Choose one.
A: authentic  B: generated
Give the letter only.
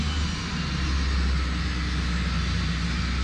A